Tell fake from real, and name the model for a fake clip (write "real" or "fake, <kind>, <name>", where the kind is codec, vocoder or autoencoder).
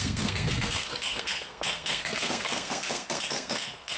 fake, codec, SNAC